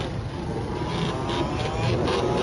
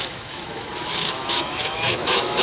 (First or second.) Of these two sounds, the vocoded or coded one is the second